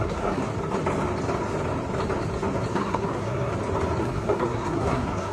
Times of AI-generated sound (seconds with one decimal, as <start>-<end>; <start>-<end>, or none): 0.0-0.5; 2.7-3.5; 4.0-5.3